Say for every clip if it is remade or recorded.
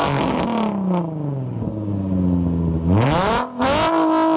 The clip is recorded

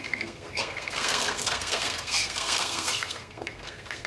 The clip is remade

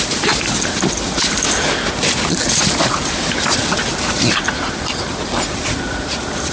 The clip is recorded